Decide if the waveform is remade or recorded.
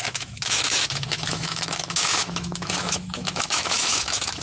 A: remade